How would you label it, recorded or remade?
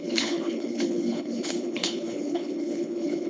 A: remade